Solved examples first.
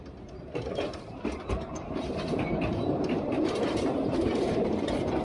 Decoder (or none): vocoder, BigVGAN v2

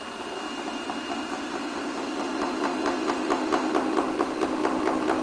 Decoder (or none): none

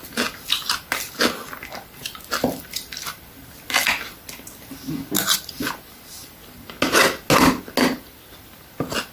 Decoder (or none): none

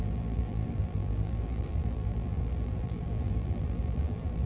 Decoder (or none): vocoder, BigVGAN v2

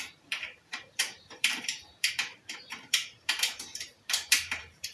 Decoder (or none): vocoder, BigVGAN v2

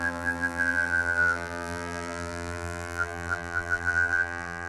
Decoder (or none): vocoder, BigVGAN v2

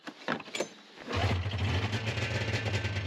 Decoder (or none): none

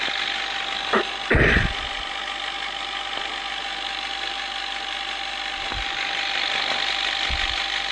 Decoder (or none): none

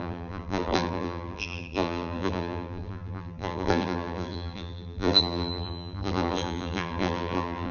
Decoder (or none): vocoder, BigVGAN v2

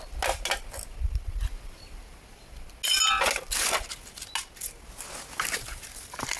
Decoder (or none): none